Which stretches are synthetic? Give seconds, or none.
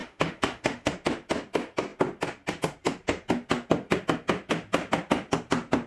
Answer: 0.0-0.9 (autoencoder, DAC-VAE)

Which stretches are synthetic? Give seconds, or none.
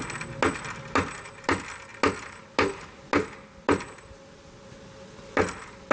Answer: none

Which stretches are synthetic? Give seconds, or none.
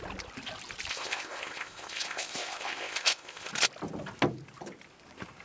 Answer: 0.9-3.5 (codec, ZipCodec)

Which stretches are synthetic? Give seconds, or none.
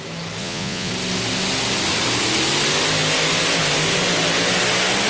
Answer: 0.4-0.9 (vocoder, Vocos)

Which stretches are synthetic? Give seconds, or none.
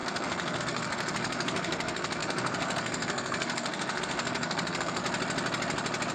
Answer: 0.0-5.0 (codec, SNAC)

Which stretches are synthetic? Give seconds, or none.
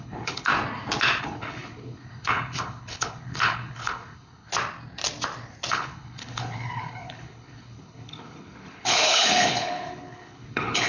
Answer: 0.0-0.5 (codec, HILCodec); 1.2-4.5; 5.7-10.9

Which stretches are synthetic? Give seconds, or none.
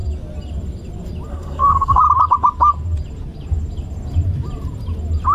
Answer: 1.3-2.0 (codec, SNAC)